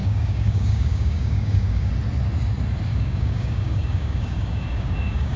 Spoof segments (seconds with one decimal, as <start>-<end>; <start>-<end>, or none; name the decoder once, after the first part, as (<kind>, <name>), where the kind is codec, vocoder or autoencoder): 0.0-1.9 (codec, DAC); 2.9-5.4